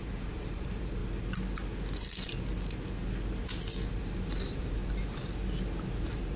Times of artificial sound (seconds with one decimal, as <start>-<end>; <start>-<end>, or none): 0.0-1.0; 3.9-4.8; 6.0-6.4